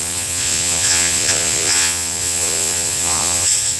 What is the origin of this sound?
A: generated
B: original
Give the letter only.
A